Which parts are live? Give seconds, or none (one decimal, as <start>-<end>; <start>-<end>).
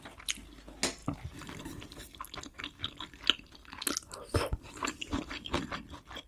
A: 0.0-6.3